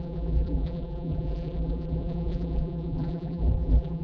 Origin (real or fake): fake